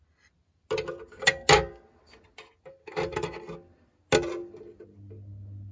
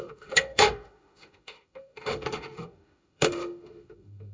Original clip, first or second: first